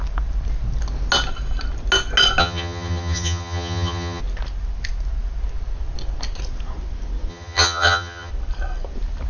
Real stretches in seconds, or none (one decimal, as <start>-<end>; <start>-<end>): 0.0-2.4; 4.2-7.3; 8.3-9.3